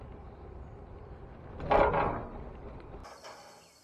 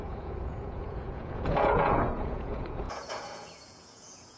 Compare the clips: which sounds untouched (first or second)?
first